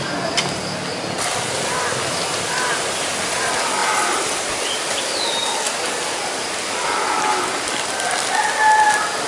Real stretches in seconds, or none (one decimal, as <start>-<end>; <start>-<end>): 0.0-9.3